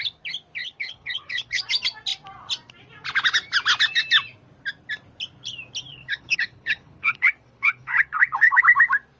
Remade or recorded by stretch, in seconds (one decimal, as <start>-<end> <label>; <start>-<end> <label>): 0.0-0.6 recorded; 0.6-1.6 remade; 1.6-5.9 recorded; 5.9-8.6 remade; 8.6-9.2 recorded